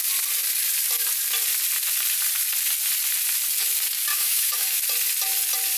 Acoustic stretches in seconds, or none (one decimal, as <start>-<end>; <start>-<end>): 0.0-4.1; 4.8-5.8